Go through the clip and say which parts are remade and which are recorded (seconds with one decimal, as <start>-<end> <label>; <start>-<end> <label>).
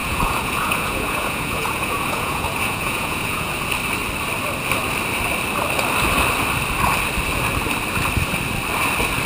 0.0-3.5 remade; 3.5-9.3 recorded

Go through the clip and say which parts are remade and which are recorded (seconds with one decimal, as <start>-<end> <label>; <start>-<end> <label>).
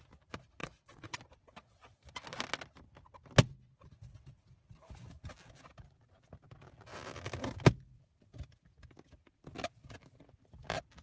0.0-0.6 recorded; 0.6-1.2 remade; 1.2-11.0 recorded